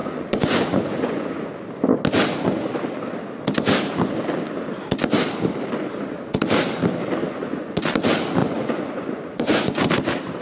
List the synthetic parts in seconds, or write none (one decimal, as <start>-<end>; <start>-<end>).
0.0-1.3; 7.2-7.8; 8.4-9.9